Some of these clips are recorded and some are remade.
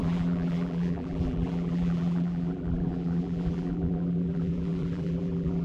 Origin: remade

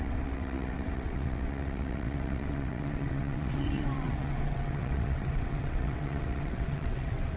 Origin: remade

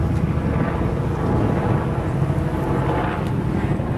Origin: recorded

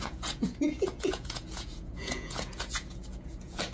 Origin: remade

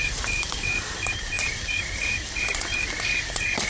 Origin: remade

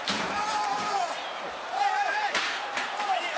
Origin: remade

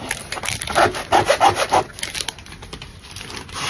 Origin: recorded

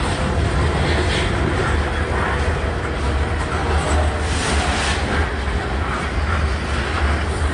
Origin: recorded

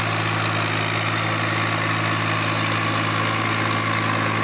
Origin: recorded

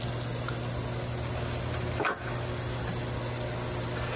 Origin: recorded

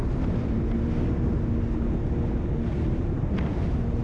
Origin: recorded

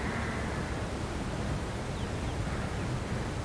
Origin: recorded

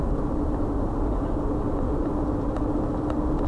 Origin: recorded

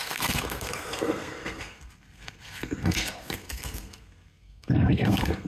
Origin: remade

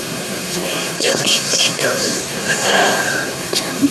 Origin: remade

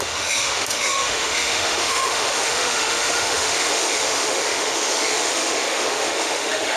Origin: remade